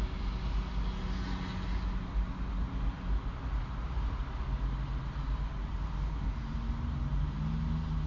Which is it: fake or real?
real